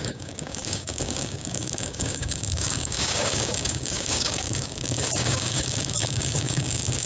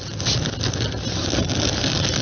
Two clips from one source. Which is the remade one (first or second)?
first